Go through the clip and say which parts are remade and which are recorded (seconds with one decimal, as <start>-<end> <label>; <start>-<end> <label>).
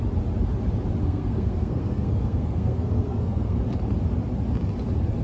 0.0-1.0 recorded; 1.0-3.6 remade; 3.6-5.2 recorded